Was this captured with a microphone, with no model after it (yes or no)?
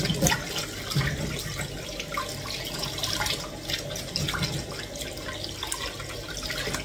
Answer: yes